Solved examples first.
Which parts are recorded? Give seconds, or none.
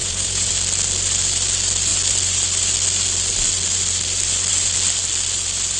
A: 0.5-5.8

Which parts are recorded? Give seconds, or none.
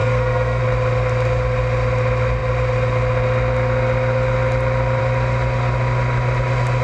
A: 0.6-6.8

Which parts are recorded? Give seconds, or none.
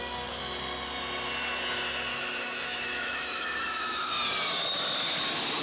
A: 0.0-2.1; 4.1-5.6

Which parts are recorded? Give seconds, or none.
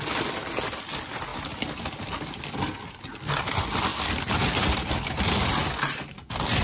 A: 0.0-6.6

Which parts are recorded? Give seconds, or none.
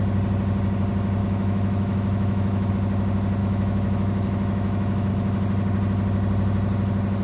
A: 0.0-1.2; 2.7-3.4; 5.1-7.2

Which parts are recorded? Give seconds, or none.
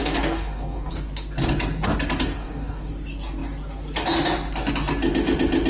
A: 0.9-2.3; 2.9-5.7